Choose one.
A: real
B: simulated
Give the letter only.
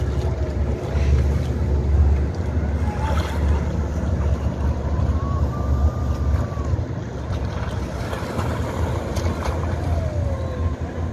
A